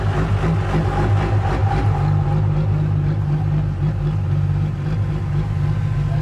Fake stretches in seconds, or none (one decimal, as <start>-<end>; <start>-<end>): none